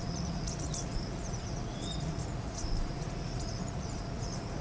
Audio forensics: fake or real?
fake